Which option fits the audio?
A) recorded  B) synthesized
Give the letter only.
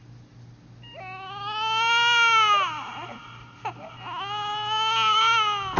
A